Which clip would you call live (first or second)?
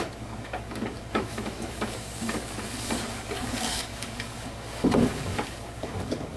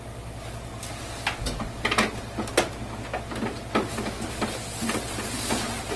second